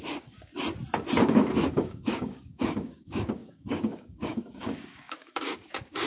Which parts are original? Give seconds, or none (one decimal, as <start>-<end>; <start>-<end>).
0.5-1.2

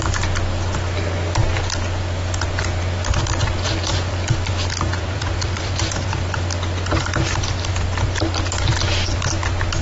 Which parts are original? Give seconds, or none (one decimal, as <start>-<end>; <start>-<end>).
0.0-3.9; 6.1-9.8

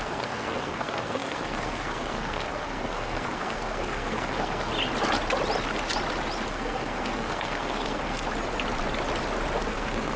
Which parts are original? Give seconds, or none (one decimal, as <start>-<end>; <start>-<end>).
4.7-6.5; 8.3-9.7